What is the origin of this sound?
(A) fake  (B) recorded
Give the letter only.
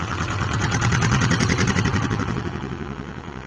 A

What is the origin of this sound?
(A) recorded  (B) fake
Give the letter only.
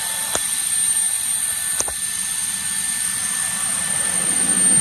A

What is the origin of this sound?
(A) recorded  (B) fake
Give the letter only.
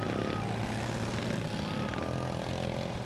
A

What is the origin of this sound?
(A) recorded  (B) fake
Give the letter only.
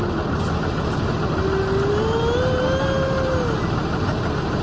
A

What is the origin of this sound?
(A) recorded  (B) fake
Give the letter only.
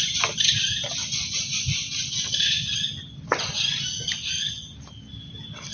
A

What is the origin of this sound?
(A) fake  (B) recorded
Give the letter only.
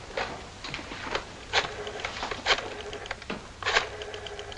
B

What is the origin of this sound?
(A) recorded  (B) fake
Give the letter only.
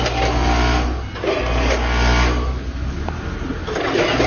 A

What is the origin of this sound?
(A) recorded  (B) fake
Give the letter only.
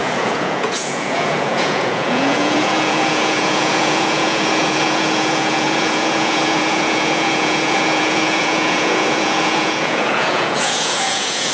B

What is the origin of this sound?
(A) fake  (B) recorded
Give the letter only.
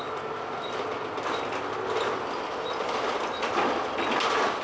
B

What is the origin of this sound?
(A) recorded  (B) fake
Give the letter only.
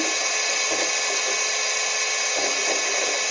A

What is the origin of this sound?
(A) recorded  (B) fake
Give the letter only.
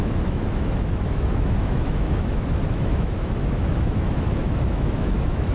B